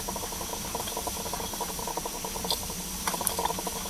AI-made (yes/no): no